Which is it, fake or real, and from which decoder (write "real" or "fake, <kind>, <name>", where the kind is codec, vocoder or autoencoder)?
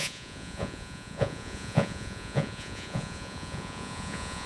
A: fake, vocoder, Vocos